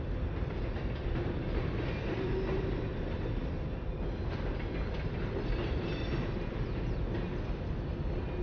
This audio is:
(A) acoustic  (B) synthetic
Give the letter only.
A